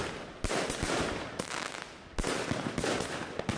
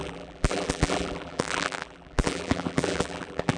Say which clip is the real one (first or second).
first